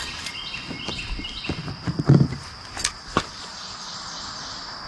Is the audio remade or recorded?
recorded